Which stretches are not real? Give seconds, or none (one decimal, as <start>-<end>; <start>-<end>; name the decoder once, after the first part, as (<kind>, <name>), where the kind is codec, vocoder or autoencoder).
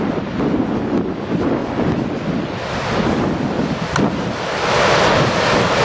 none